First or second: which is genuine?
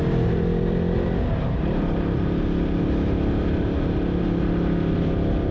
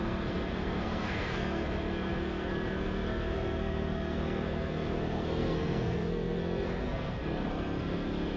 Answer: first